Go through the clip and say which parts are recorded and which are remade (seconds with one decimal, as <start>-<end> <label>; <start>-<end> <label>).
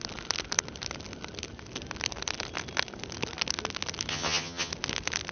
0.0-4.1 recorded; 4.1-4.7 remade; 4.7-5.3 recorded